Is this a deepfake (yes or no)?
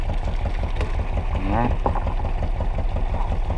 no